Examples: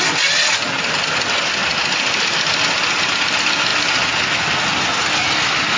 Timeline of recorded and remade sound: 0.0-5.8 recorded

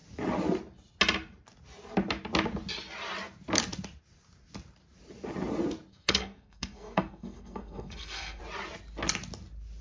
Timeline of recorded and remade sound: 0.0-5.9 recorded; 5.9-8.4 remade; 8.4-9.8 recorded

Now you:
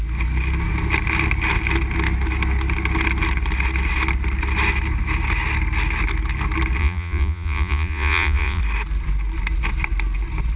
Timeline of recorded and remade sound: 0.0-6.8 recorded; 6.8-8.6 remade; 8.6-10.6 recorded

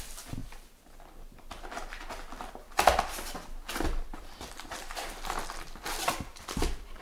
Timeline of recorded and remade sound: 0.0-4.1 recorded; 4.1-5.1 remade; 5.1-7.0 recorded

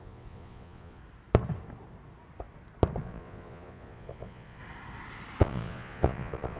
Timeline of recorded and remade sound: 0.0-1.0 remade; 1.0-3.0 recorded; 3.0-4.6 remade; 4.6-5.4 recorded; 5.4-6.6 remade

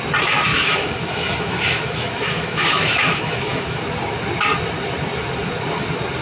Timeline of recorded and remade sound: 0.0-0.5 recorded; 0.5-3.8 remade; 3.8-6.2 recorded